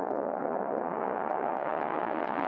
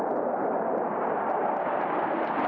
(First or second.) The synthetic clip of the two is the first